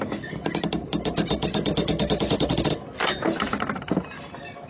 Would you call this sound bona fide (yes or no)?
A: yes